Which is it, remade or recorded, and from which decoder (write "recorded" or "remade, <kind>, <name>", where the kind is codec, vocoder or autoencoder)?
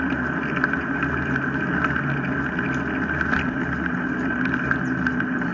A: recorded